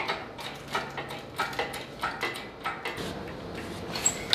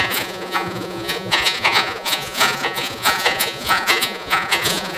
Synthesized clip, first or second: second